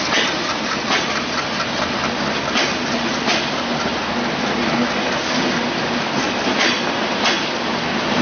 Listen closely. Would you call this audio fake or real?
real